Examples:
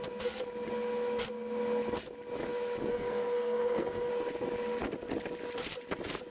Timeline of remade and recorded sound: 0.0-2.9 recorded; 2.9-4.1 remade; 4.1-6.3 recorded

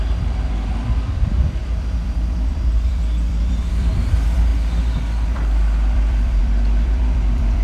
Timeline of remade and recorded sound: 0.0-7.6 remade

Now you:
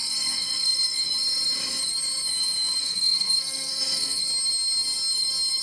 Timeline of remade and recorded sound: 0.0-1.0 remade; 1.0-2.8 recorded; 2.8-4.2 remade; 4.2-5.6 recorded

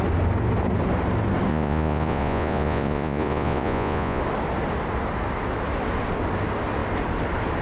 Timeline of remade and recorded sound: 0.0-1.5 recorded; 1.5-4.2 remade; 4.2-7.6 recorded

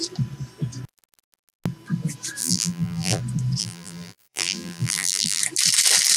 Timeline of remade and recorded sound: 0.0-2.4 recorded; 2.4-3.2 remade; 3.2-3.6 recorded; 3.6-5.4 remade; 5.4-6.2 recorded